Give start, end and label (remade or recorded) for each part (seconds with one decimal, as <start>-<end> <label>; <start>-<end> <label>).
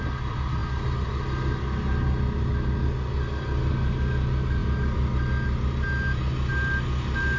0.0-7.4 recorded